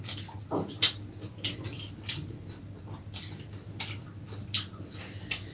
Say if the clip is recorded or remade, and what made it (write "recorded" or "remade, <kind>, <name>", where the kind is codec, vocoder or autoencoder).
recorded